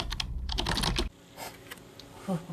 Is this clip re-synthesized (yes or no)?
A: no